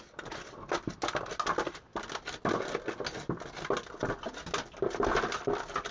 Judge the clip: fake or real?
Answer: real